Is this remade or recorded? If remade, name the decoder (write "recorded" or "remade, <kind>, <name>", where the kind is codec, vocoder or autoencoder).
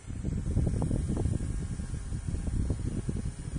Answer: recorded